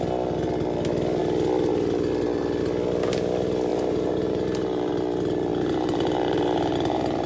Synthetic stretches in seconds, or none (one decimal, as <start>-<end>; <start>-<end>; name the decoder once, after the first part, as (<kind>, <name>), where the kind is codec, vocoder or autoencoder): 3.7-4.9 (vocoder, BigVGAN v2); 5.5-7.3